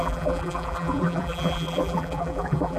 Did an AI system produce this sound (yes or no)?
yes